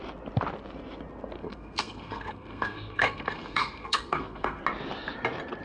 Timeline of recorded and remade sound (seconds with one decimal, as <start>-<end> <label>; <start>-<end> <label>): 0.0-1.4 recorded; 1.4-4.6 remade; 4.6-5.6 recorded